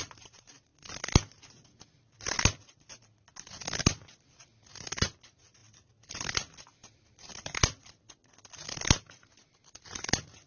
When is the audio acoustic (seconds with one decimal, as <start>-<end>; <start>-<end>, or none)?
0.0-5.6; 8.1-10.5